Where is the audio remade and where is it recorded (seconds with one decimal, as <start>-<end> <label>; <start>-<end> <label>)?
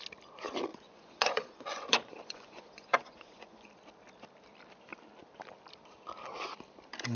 0.0-0.7 recorded; 0.7-3.7 remade; 3.7-7.2 recorded